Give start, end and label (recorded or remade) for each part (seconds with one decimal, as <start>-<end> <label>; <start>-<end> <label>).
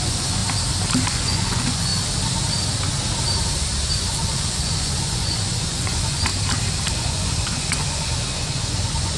0.0-0.4 remade; 0.4-1.1 recorded; 1.1-1.9 remade; 1.9-3.9 recorded; 3.9-6.3 remade; 6.3-6.9 recorded; 6.9-9.2 remade